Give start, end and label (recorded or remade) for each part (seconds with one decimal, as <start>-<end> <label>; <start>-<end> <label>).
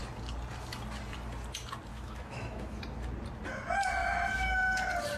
0.0-1.9 recorded; 1.9-2.8 remade; 2.8-5.2 recorded